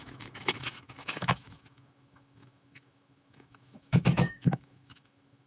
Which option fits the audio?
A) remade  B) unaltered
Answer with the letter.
A